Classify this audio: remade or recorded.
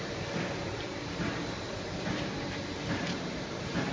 remade